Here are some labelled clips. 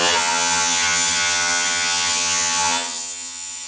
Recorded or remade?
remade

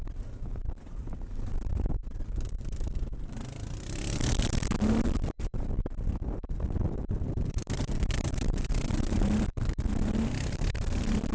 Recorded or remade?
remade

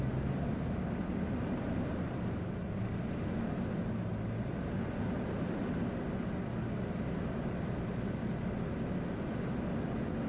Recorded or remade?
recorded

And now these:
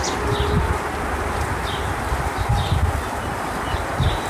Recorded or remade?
recorded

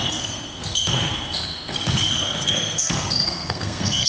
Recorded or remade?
remade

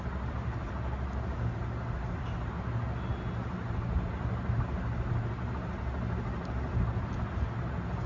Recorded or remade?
recorded